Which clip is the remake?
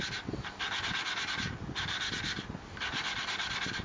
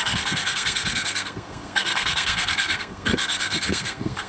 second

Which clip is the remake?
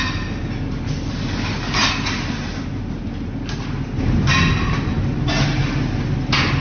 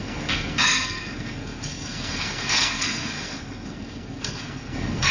second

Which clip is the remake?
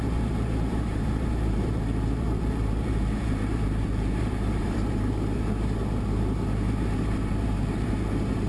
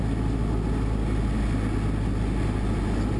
first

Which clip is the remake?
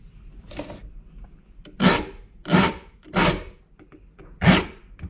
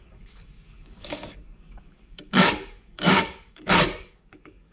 second